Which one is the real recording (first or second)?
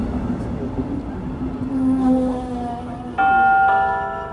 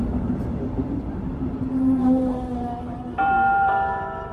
first